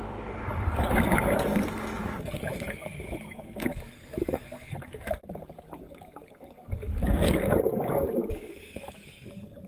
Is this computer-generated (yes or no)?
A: yes